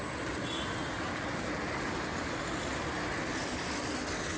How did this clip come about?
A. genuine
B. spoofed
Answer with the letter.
A